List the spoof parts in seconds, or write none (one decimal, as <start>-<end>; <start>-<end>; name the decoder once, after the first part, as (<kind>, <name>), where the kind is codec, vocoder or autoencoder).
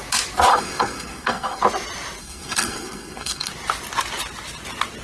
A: 0.5-1.6 (codec, SNAC); 2.2-3.5